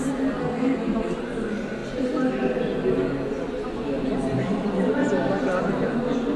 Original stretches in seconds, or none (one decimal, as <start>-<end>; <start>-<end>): 0.0-0.4; 1.2-6.4